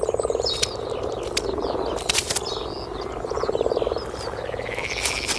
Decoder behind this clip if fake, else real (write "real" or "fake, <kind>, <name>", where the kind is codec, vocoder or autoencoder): real